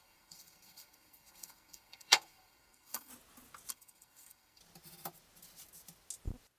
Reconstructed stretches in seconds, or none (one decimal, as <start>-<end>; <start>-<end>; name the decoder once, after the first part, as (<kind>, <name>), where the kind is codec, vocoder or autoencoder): 0.0-3.1 (codec, SNAC); 3.7-4.6